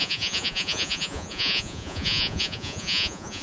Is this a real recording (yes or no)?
no